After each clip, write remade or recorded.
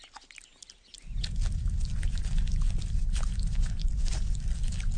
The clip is recorded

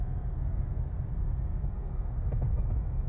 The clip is remade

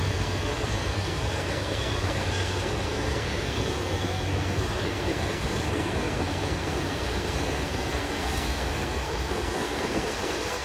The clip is remade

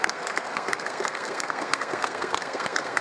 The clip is remade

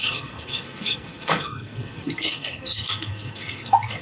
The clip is remade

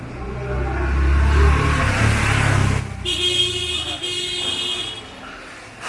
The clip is recorded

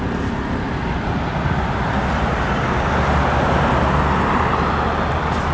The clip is recorded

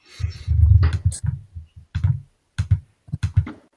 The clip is recorded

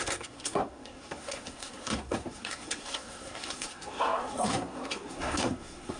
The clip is remade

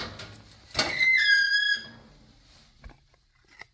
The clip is recorded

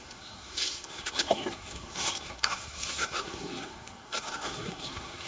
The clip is remade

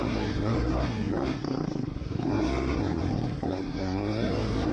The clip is remade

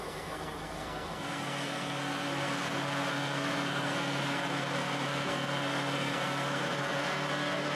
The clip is remade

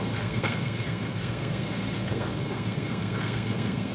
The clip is remade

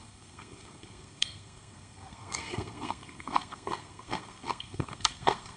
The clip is remade